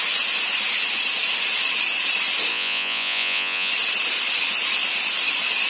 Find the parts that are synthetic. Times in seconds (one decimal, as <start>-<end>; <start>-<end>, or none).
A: 2.5-3.7